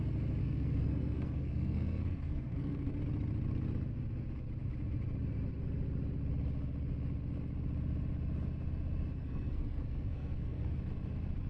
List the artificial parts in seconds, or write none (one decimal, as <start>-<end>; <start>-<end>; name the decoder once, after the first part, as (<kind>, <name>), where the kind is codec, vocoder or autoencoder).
0.4-3.0 (codec, SNAC); 9.2-10.8